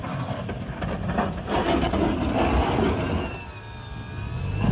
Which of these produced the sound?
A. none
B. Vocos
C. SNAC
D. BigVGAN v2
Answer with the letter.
A